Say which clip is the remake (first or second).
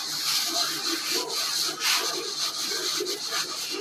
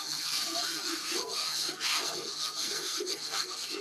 second